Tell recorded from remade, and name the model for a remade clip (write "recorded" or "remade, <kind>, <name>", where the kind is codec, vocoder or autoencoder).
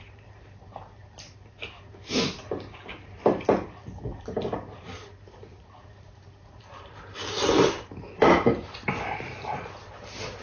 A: remade, vocoder, BigVGAN v2